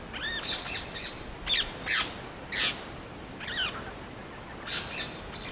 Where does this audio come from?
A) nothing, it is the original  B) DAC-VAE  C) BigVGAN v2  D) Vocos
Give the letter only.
A